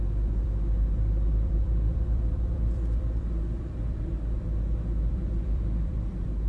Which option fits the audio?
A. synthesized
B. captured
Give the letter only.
A